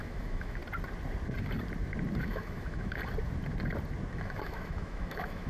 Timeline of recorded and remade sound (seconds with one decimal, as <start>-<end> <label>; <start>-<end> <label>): 0.0-0.6 remade; 0.6-2.2 recorded; 2.2-3.0 remade; 3.0-4.1 recorded; 4.1-5.5 remade